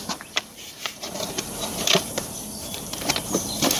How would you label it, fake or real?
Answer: fake